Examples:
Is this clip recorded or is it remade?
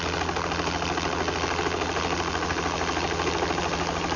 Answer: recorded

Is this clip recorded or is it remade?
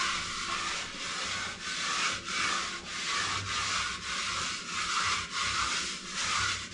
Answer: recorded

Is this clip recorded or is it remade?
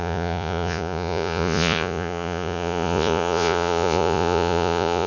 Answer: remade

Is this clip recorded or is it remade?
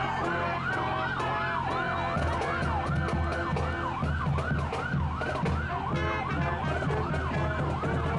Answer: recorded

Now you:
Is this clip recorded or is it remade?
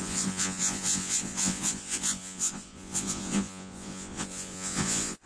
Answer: remade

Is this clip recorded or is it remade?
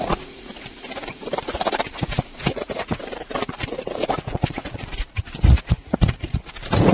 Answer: remade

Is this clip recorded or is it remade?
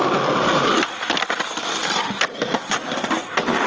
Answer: recorded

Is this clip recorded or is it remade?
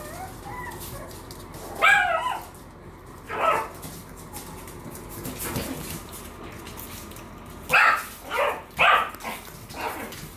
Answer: recorded